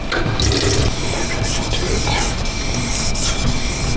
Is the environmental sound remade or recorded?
recorded